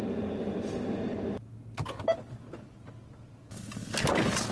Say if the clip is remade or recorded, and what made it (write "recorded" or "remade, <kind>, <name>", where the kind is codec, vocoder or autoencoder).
recorded